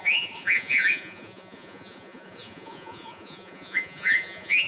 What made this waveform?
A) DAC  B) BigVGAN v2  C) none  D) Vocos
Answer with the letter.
D